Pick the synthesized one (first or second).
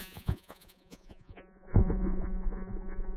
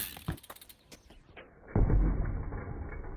first